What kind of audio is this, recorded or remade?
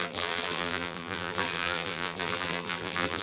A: remade